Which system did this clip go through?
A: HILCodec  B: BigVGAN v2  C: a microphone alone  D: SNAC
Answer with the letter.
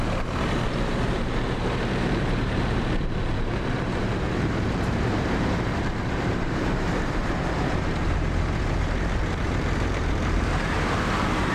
B